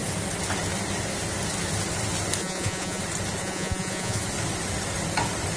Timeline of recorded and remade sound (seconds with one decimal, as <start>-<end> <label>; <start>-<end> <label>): 0.0-2.4 recorded; 2.4-3.0 remade; 3.0-3.4 recorded; 3.4-4.2 remade; 4.2-5.6 recorded